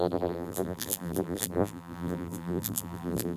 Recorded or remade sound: remade